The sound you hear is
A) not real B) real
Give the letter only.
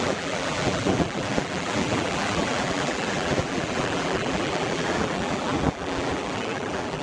A